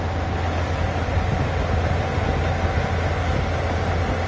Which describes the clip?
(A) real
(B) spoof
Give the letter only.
A